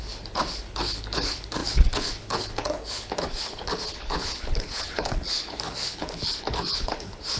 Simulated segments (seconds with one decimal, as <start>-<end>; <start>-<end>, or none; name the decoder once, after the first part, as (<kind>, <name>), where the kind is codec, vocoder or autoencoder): 0.0-7.4 (codec, HILCodec)